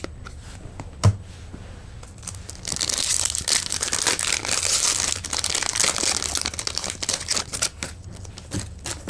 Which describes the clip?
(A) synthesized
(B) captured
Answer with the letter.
B